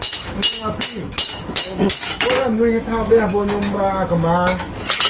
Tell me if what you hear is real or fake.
fake